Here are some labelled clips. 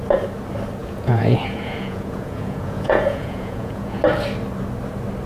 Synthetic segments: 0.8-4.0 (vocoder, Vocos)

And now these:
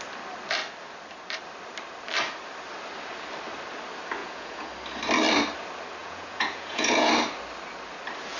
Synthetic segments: 4.2-4.7 (vocoder, Vocos); 6.0-7.1